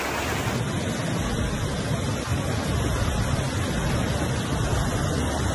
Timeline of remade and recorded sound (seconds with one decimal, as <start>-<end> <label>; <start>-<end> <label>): 0.0-5.5 recorded